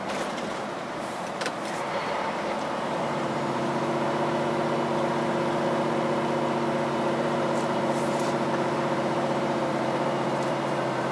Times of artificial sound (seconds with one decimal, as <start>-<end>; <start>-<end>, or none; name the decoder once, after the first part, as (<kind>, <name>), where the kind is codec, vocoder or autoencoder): 0.0-3.7 (vocoder, BigVGAN v2); 6.9-11.1